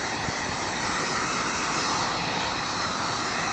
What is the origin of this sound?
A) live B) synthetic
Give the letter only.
A